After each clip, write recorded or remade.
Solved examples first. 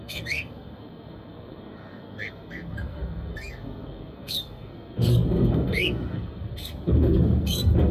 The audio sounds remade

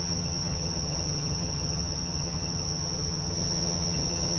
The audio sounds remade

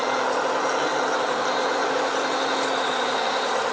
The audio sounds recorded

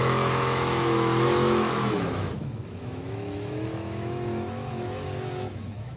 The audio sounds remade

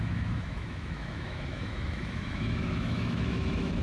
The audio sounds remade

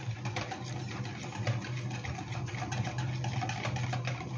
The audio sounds recorded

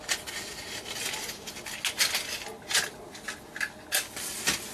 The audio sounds recorded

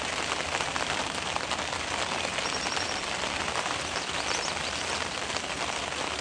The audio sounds recorded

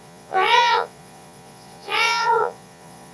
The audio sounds remade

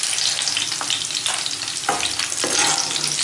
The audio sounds recorded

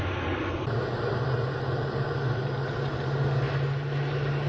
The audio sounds recorded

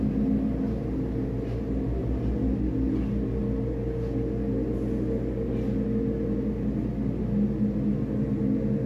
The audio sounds recorded